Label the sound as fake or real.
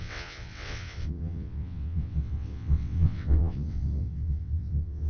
fake